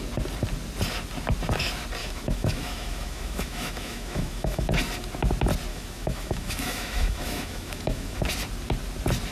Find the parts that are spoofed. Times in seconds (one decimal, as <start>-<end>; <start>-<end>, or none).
2.0-4.7; 5.7-8.2